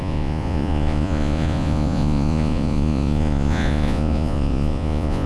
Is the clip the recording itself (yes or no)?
no